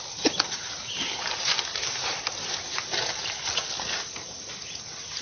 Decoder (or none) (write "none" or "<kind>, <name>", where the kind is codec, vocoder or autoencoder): none